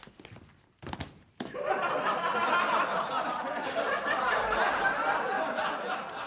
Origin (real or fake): real